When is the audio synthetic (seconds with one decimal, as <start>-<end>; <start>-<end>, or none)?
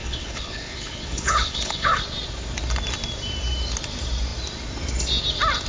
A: 0.0-2.0